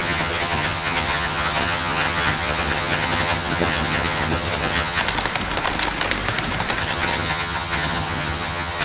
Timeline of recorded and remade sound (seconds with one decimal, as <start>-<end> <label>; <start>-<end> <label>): 0.0-5.0 remade; 5.0-6.8 recorded; 6.8-8.8 remade